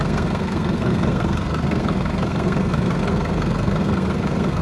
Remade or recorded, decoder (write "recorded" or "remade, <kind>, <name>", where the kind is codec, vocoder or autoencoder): remade, codec, SNAC